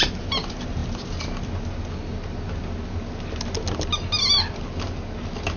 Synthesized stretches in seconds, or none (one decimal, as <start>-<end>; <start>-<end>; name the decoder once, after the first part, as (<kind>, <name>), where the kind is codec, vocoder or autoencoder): none